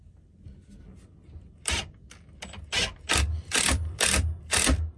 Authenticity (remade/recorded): recorded